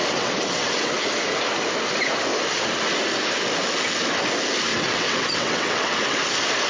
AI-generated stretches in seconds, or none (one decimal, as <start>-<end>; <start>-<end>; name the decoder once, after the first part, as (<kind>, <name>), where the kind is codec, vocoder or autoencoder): 0.0-0.9 (vocoder, WaveNeXt); 4.7-6.2